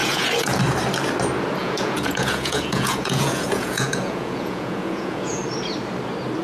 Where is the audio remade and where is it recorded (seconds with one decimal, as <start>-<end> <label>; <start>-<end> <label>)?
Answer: 0.0-0.6 remade; 0.6-1.6 recorded; 1.6-5.4 remade; 5.4-6.4 recorded